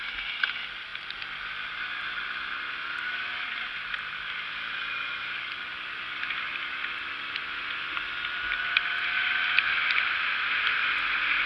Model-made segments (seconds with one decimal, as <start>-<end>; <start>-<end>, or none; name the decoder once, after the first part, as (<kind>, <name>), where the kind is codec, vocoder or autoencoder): none

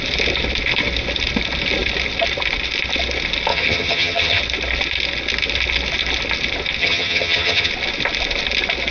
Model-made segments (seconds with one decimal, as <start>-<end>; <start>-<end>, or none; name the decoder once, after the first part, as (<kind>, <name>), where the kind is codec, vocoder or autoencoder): 3.5-4.4 (vocoder, HiFi-GAN); 6.8-7.7

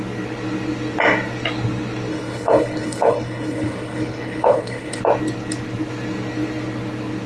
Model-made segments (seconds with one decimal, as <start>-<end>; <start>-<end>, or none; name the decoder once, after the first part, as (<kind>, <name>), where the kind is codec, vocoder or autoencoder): 2.1-5.0 (codec, HILCodec)

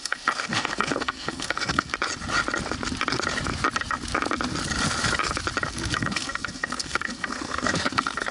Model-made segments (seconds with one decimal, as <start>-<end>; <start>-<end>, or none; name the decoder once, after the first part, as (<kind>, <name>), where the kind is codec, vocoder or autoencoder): 0.0-1.9 (codec, SNAC); 5.7-8.3

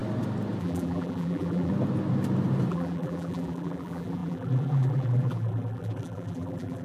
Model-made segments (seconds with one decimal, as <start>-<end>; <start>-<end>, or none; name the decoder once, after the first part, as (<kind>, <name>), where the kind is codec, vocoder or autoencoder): 0.6-1.7 (vocoder, BigVGAN v2); 2.7-6.8

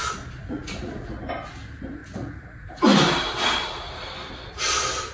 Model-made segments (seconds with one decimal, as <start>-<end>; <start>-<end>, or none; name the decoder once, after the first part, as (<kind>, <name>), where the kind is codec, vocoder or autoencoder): 0.4-0.9 (vocoder, Vocos); 2.0-2.8